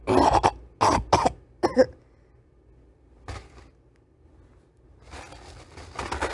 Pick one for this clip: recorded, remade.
recorded